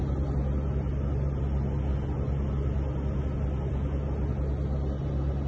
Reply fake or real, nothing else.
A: real